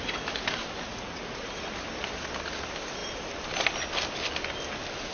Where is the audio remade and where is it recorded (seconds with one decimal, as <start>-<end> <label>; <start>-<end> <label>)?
0.0-0.9 recorded; 0.9-1.5 remade; 1.5-5.1 recorded